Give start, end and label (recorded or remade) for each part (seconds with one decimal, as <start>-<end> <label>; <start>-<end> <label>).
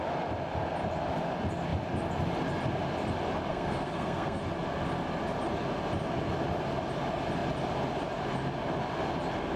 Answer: 0.0-3.5 recorded; 3.5-4.4 remade; 4.4-9.6 recorded